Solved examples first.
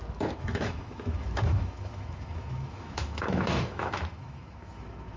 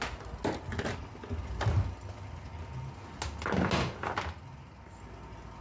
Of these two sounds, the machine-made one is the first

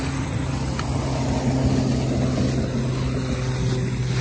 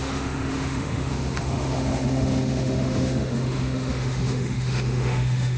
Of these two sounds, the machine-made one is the second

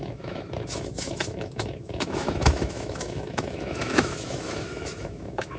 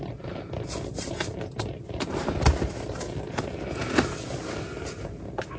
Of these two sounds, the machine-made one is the first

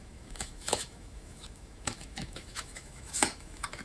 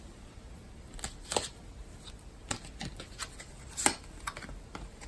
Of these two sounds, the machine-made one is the first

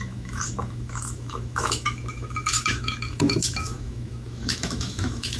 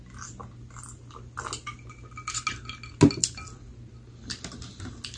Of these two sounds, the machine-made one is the first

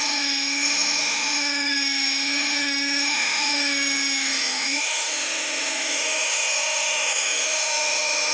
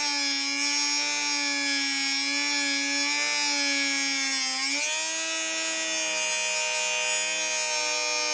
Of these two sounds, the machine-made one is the first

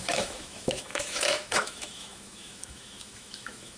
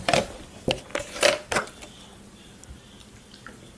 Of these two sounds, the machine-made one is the first